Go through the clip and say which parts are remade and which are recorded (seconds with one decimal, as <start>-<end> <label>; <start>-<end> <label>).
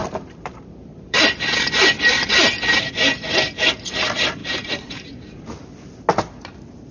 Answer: 0.0-1.2 remade; 1.2-4.4 recorded; 4.4-5.9 remade; 5.9-6.9 recorded